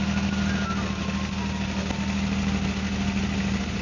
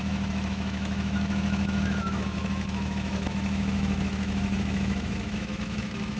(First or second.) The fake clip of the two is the second